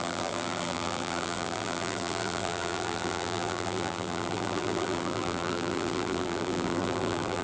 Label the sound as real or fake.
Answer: fake